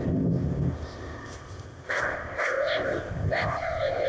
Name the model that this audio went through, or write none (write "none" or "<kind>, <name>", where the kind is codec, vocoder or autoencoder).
codec, ZipCodec